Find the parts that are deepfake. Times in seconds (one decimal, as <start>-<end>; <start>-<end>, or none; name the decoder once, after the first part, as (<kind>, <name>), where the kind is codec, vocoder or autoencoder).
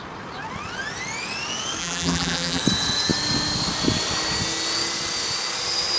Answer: 1.8-2.6 (vocoder, BigVGAN v2)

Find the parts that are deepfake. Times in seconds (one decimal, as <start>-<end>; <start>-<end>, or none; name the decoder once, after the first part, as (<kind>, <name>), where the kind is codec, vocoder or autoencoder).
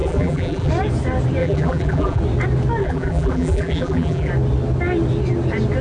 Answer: 0.0-0.7 (vocoder, BigVGAN v2); 1.4-2.2; 2.8-4.3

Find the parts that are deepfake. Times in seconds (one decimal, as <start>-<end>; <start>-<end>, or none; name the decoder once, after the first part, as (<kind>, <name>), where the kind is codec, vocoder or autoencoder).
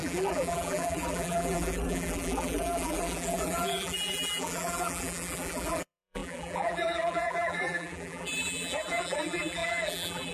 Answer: 0.0-10.3 (vocoder, BigVGAN v2)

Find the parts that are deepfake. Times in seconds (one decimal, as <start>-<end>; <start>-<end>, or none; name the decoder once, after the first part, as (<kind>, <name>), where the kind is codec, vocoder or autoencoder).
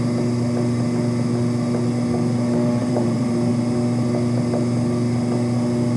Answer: 2.8-3.5 (vocoder, BigVGAN v2)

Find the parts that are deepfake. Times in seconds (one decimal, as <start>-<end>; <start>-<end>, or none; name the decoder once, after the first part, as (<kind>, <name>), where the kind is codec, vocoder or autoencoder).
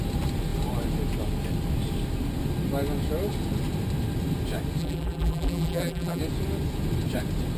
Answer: 4.8-6.2 (vocoder, BigVGAN v2)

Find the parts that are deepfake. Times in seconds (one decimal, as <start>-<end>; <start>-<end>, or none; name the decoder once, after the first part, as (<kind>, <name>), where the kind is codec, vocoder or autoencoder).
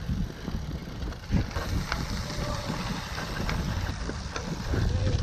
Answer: none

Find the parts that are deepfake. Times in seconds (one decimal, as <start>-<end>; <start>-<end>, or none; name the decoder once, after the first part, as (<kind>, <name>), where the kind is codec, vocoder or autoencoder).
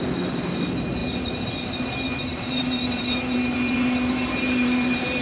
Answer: 2.3-5.2 (vocoder, BigVGAN v2)